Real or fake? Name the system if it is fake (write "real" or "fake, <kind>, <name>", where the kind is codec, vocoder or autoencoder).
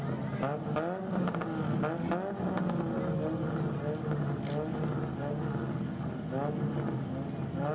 real